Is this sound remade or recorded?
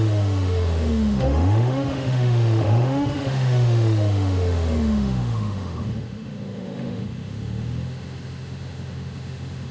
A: remade